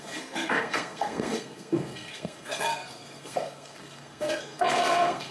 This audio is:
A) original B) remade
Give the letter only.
B